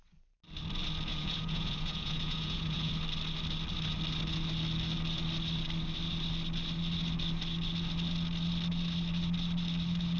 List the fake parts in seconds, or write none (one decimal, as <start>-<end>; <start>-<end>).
1.1-2.9